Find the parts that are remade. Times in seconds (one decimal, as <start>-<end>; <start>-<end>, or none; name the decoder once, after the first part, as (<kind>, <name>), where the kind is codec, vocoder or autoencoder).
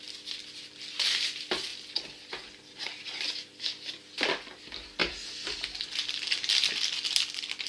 none